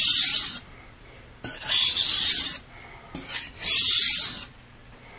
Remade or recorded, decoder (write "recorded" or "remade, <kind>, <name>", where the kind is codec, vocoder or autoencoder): recorded